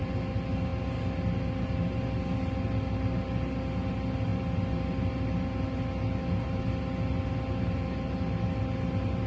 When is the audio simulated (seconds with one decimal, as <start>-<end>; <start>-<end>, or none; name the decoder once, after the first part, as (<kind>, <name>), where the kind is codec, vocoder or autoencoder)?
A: none